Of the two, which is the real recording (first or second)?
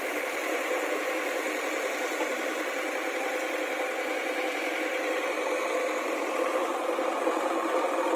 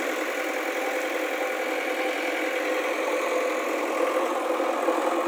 second